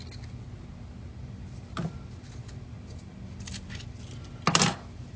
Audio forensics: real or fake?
real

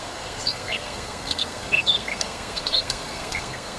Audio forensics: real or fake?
fake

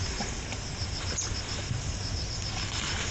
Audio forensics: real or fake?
fake